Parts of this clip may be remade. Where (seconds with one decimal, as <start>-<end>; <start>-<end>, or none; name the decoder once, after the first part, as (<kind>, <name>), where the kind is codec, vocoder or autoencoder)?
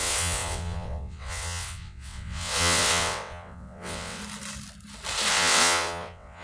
0.0-4.2 (vocoder, WaveNeXt); 5.3-6.4